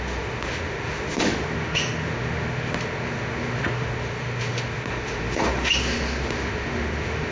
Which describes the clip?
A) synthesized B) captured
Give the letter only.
A